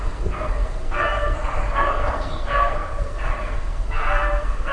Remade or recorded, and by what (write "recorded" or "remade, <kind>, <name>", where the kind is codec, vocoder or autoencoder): remade, codec, SNAC